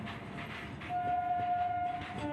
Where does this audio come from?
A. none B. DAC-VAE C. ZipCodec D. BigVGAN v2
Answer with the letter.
A